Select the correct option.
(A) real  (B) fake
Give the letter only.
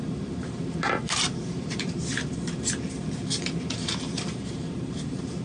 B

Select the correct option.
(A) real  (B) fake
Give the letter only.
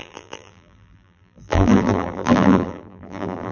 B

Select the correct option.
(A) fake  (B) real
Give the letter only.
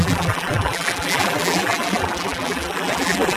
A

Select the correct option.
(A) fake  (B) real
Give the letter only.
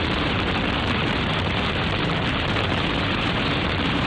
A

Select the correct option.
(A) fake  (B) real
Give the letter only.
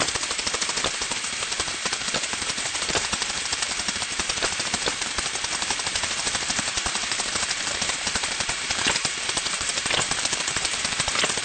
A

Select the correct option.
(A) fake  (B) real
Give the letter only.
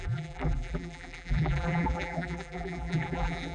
A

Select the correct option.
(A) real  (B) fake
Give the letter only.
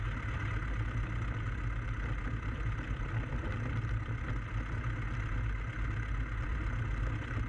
A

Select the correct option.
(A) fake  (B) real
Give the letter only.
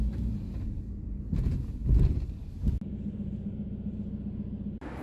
B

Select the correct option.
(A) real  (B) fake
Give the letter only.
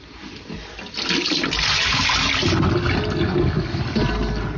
A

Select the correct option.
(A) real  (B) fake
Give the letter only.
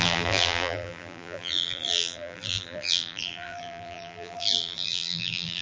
B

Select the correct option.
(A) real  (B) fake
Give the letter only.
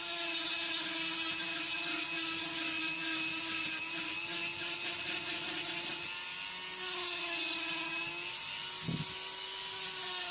A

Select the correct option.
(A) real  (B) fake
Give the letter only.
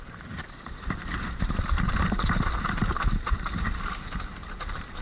B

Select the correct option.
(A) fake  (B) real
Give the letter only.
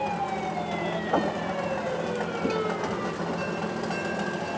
B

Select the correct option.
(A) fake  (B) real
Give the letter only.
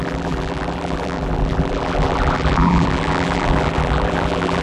A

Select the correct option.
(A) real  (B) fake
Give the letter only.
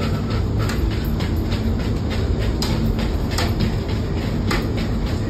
A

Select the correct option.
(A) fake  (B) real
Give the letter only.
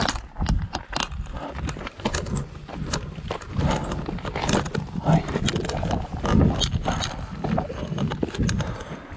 B